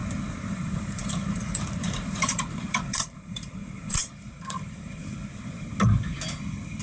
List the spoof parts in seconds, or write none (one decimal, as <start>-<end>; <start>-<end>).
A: 0.5-5.0